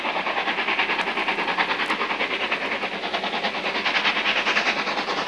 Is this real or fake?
real